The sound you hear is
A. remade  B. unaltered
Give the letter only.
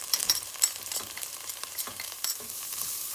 A